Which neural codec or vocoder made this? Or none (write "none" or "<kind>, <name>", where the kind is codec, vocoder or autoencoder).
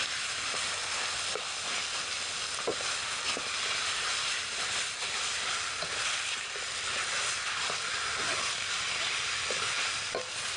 none